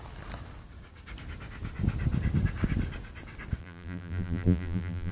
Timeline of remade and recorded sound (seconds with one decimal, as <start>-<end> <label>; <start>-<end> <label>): 0.0-3.6 recorded; 3.6-5.1 remade